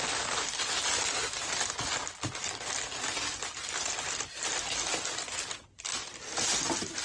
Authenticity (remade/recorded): recorded